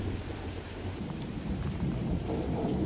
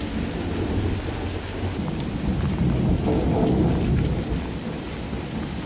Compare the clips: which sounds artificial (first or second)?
first